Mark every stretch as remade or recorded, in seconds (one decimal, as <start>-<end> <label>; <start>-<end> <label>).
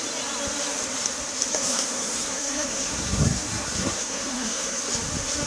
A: 0.0-1.5 recorded; 1.5-4.8 remade; 4.8-5.5 recorded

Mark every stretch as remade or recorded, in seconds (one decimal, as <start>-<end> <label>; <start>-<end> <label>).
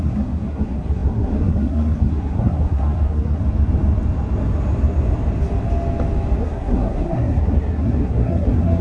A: 0.0-3.4 remade; 3.4-6.4 recorded; 6.4-8.8 remade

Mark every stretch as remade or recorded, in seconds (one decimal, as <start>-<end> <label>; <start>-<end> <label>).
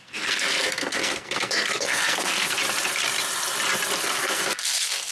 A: 0.0-2.6 remade; 2.6-4.0 recorded; 4.0-5.1 remade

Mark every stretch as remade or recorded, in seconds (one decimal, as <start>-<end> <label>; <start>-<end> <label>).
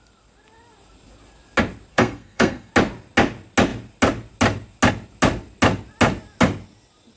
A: 0.0-1.9 recorded; 1.9-2.7 remade; 2.7-7.2 recorded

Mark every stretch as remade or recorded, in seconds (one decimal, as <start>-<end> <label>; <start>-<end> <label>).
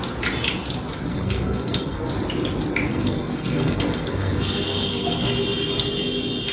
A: 0.0-1.1 recorded; 1.1-2.1 remade; 2.1-2.9 recorded; 2.9-5.3 remade; 5.3-6.5 recorded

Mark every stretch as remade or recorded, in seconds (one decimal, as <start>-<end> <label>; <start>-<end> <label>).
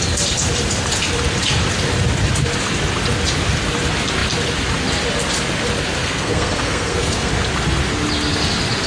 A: 0.0-6.0 recorded; 6.0-7.3 remade; 7.3-8.9 recorded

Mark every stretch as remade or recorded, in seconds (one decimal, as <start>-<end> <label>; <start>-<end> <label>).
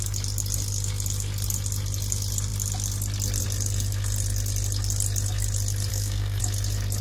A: 0.0-5.9 recorded; 5.9-6.4 remade; 6.4-7.0 recorded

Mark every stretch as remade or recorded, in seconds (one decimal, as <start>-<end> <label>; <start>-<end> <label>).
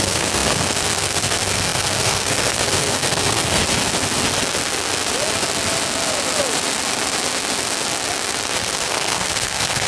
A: 0.0-3.6 remade; 3.6-8.9 recorded; 8.9-9.9 remade